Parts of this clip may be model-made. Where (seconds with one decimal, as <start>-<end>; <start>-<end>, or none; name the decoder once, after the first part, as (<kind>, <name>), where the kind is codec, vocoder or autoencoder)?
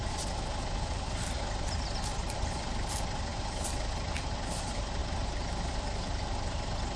none